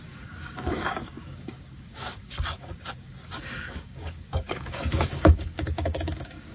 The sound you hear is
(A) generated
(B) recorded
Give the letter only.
A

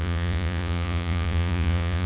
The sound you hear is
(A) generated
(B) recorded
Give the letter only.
A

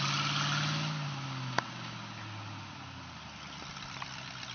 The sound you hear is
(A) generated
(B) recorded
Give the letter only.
B